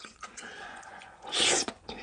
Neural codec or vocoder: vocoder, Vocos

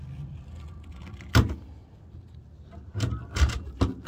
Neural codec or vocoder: none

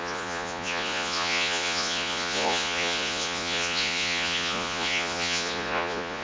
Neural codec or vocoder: vocoder, Vocos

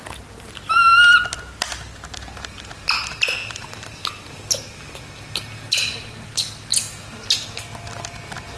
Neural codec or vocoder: none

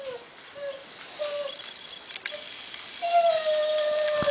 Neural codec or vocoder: none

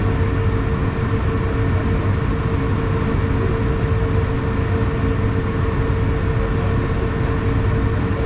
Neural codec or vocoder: none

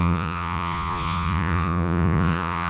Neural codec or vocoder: vocoder, Vocos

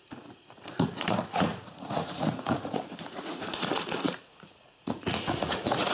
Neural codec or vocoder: vocoder, Vocos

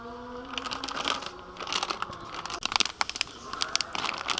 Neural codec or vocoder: none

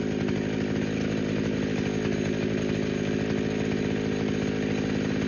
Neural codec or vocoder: none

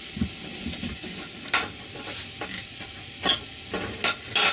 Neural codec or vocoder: none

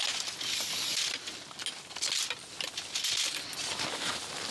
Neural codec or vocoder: none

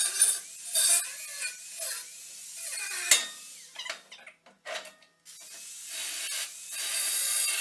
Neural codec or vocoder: none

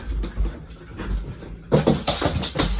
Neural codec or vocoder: none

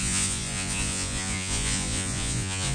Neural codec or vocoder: vocoder, Vocos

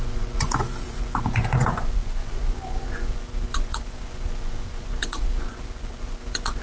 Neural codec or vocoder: vocoder, Vocos